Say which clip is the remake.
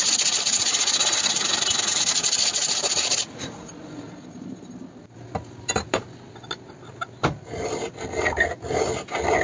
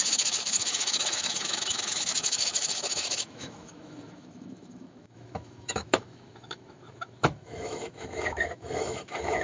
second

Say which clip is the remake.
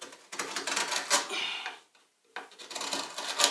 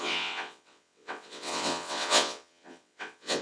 second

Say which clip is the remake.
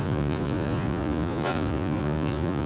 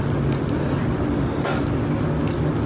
first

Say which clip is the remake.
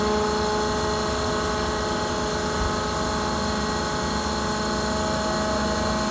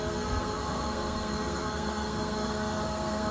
second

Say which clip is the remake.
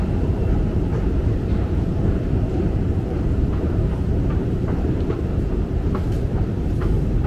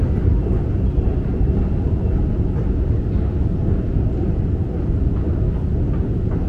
first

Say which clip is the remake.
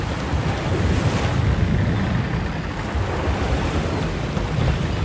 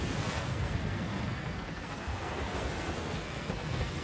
second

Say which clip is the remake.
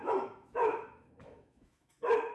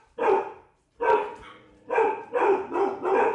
first